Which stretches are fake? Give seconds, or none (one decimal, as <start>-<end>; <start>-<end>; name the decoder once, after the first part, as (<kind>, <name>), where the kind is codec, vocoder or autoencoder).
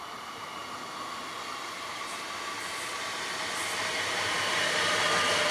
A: 0.0-0.6 (vocoder, BigVGAN v2); 3.9-5.5